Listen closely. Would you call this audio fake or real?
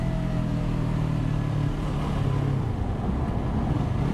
real